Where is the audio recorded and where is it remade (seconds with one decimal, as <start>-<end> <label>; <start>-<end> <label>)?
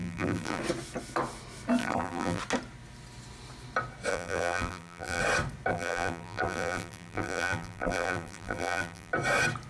0.0-0.6 remade; 0.6-1.8 recorded; 1.8-2.4 remade; 2.4-4.1 recorded; 4.1-5.2 remade; 5.2-5.7 recorded; 5.7-9.1 remade; 9.1-9.7 recorded